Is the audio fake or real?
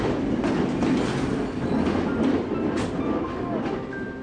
real